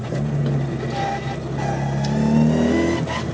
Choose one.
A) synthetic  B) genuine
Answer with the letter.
B